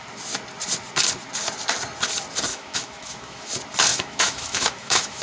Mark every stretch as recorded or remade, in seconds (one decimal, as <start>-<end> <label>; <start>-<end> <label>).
0.0-2.5 recorded; 2.5-3.5 remade; 3.5-3.9 recorded; 3.9-5.2 remade